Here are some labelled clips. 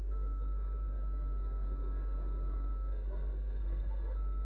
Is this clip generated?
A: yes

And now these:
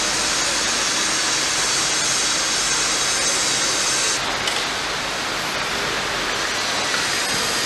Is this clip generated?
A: no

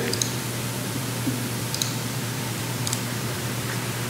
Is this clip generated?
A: yes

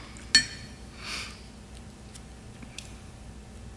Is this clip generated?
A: no